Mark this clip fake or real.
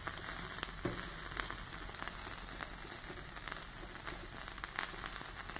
real